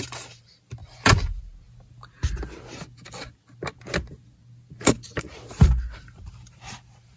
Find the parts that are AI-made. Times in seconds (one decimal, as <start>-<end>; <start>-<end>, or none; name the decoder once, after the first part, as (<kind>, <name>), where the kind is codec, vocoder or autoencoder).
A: 0.0-0.8 (vocoder, BigVGAN v2); 4.8-7.2